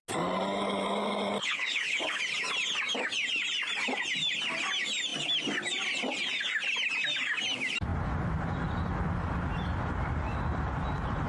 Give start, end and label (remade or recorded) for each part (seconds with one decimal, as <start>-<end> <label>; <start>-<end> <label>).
0.0-1.4 recorded; 1.4-2.2 remade; 2.2-11.3 recorded